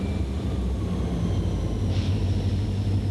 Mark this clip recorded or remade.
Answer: recorded